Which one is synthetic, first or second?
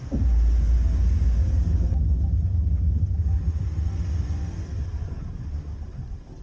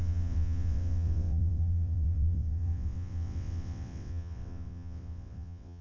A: second